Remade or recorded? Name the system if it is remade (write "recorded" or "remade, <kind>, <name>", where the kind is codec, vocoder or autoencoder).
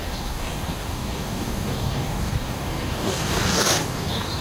remade, codec, DAC